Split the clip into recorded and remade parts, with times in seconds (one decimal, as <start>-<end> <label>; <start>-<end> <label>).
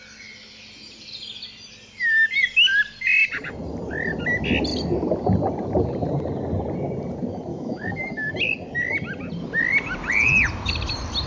0.0-7.5 recorded; 7.5-8.3 remade; 8.3-11.3 recorded